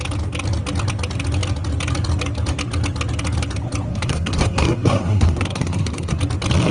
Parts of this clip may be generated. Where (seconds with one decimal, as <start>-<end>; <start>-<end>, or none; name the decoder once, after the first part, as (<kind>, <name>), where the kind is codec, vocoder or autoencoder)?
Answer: 3.9-6.2 (codec, SNAC)